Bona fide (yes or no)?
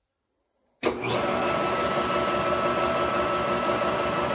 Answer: yes